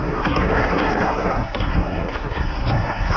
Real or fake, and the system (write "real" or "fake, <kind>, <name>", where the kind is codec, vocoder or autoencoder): fake, codec, SNAC